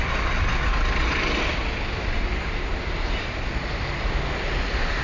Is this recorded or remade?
recorded